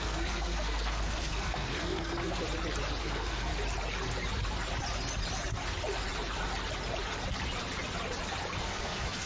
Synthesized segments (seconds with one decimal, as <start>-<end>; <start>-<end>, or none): 0.0-2.4; 3.0-3.5; 8.6-9.3